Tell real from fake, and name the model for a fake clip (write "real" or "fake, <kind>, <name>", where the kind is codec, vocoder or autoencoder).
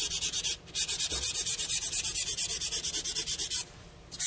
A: fake, vocoder, BigVGAN v2